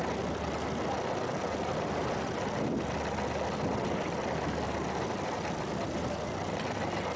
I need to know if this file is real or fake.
real